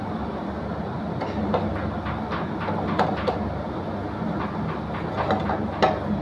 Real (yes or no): yes